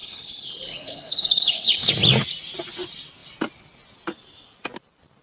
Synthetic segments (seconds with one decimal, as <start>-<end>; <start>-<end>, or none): 0.0-1.9